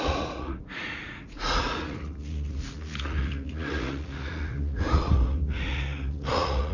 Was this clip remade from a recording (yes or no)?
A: yes